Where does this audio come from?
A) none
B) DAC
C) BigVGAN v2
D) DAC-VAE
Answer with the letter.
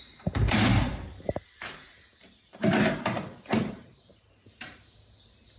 C